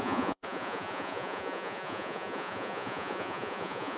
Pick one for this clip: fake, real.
fake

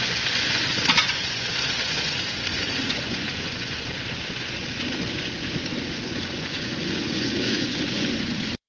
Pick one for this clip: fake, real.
fake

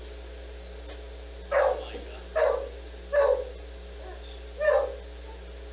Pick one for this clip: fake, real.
real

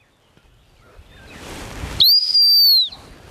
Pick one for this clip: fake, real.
real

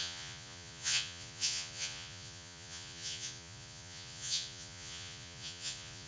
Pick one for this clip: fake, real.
fake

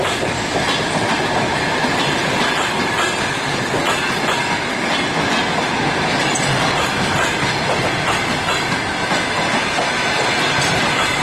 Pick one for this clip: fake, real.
real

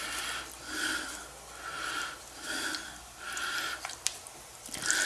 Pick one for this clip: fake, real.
real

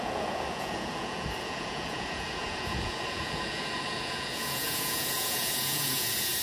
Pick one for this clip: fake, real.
fake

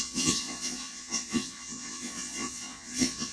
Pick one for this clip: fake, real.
fake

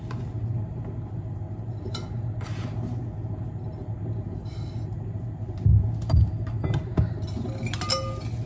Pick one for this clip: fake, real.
real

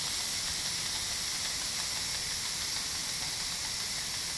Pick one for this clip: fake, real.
real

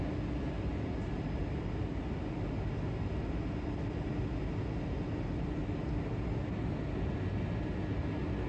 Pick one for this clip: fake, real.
real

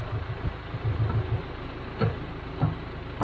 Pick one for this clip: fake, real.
real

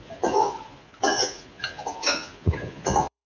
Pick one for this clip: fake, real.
fake